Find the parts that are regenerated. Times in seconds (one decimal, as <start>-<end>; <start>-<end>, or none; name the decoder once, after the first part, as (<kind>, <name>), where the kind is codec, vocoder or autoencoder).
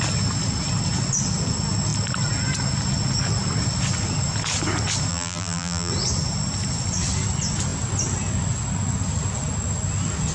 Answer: 5.1-5.9 (vocoder, BigVGAN v2)